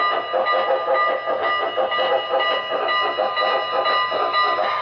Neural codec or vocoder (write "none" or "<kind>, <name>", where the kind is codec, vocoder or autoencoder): none